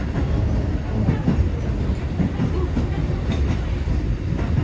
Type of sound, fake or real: real